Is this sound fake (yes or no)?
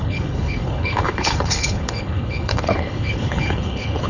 yes